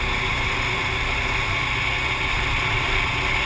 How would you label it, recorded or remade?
recorded